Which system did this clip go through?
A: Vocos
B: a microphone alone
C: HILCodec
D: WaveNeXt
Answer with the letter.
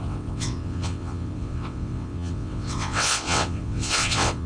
D